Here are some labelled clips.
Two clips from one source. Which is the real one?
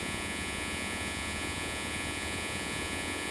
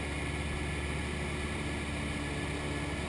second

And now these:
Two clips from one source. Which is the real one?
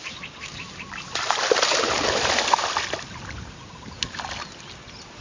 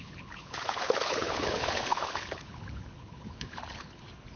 first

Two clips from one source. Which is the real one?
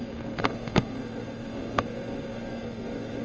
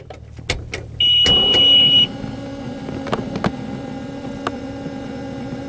second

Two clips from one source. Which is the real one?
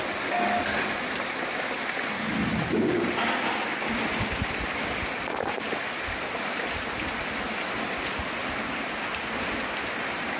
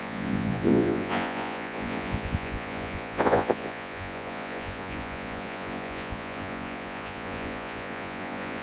first